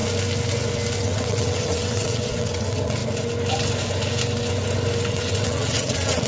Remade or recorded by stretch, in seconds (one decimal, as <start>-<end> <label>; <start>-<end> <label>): 0.0-1.0 recorded; 1.0-3.0 remade; 3.0-5.0 recorded; 5.0-6.3 remade